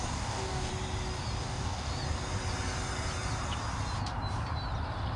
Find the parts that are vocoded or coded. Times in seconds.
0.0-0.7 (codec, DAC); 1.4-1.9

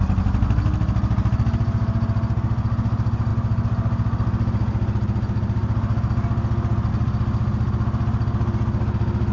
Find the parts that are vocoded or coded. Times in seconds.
none

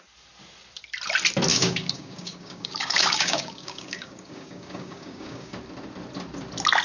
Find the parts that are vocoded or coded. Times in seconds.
1.5-5.6 (codec, DAC)

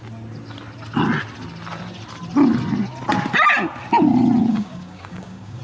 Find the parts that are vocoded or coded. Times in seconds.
4.5-5.6 (codec, DAC)

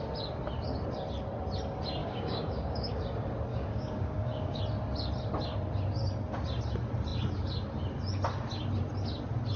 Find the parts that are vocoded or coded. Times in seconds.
2.0-3.0 (codec, DAC); 3.5-4.6

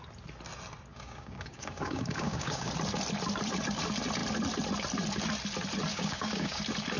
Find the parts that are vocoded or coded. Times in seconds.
0.9-2.7 (codec, DAC); 5.9-6.6

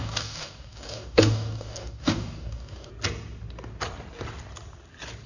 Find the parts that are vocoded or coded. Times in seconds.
0.0-2.9 (codec, DAC)

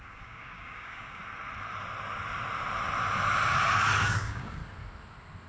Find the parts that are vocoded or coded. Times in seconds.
0.0-1.2 (codec, DAC); 4.0-4.6